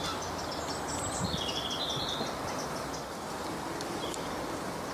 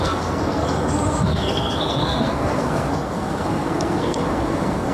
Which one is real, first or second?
first